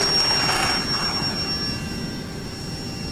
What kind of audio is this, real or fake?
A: real